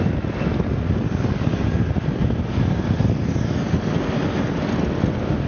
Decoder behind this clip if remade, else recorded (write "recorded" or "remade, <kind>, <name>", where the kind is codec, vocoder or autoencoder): recorded